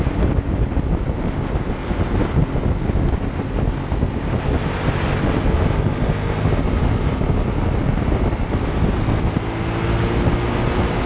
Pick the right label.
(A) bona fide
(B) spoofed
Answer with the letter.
A